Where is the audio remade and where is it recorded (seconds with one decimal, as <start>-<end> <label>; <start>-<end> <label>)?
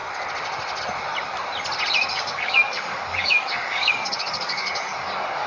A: 0.0-2.1 recorded; 2.1-5.5 remade